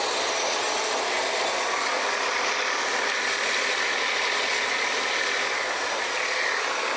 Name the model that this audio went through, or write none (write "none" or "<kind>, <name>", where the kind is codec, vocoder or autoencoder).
none